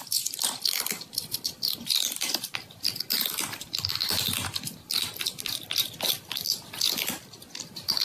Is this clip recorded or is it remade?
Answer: remade